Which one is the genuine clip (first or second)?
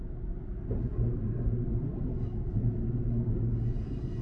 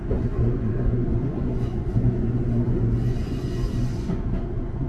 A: first